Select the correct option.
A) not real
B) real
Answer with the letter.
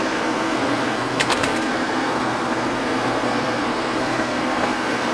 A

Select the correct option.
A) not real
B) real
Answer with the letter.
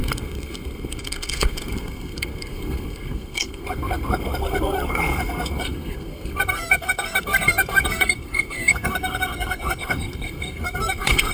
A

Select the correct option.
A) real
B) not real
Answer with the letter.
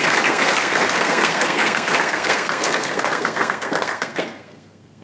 B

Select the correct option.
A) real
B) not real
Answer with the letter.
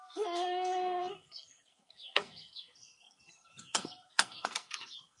B